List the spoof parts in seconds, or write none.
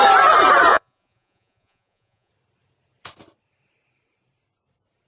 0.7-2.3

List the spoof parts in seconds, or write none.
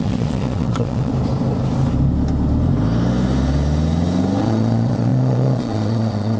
0.0-1.1; 4.4-6.4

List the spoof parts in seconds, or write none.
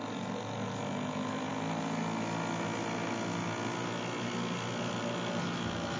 none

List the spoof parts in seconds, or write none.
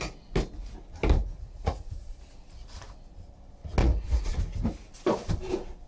1.2-2.2; 3.8-4.4